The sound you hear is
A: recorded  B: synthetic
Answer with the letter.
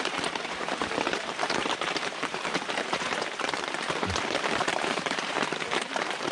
B